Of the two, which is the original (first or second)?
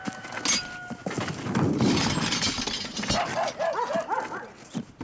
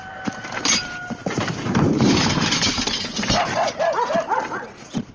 first